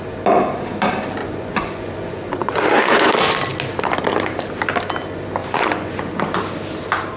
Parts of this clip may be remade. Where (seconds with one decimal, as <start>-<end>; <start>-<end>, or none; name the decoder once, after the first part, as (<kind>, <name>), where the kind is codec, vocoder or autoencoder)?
1.2-3.1 (vocoder, Vocos); 5.4-6.2

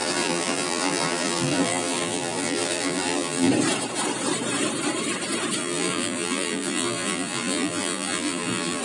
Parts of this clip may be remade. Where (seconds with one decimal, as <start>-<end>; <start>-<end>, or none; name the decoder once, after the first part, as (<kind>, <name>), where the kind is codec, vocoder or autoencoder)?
0.0-3.5 (vocoder, BigVGAN v2); 5.6-8.8

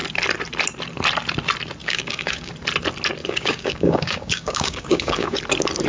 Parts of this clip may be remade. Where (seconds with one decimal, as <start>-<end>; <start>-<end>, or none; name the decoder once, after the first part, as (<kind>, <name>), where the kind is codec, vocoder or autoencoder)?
1.8-2.5 (codec, DAC); 3.2-5.4

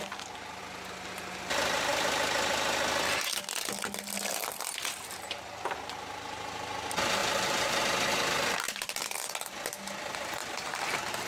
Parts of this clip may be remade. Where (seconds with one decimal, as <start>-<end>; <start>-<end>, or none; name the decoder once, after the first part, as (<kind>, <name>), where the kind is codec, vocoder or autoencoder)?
7.2-7.8 (vocoder, BigVGAN v2); 10.4-11.3

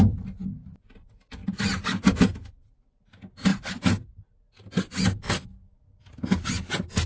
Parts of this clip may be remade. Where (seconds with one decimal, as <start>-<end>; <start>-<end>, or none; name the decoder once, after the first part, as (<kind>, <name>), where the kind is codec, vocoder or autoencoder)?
none

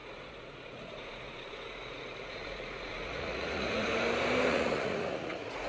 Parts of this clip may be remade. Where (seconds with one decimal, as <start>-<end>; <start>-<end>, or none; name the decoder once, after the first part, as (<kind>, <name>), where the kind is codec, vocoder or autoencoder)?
0.0-3.9 (vocoder, Vocos); 4.5-5.7

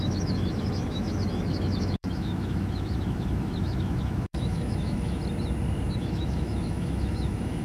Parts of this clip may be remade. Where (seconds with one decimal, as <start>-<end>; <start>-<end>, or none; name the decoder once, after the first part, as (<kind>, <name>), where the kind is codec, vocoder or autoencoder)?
0.0-5.2 (autoencoder, DAC-VAE); 6.0-7.6

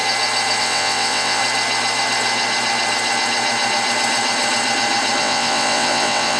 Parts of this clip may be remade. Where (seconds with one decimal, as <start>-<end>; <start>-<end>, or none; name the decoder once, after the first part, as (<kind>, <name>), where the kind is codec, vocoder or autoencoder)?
0.6-1.4 (vocoder, WaveNeXt); 5.2-6.4